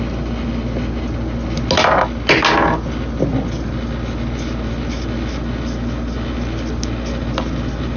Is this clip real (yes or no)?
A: yes